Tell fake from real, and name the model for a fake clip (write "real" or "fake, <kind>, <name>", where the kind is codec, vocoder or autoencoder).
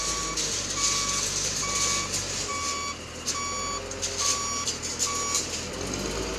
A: real